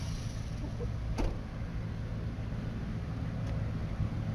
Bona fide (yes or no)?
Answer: yes